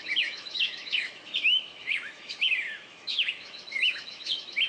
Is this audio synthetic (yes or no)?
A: yes